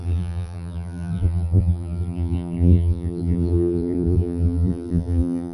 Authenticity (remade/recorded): remade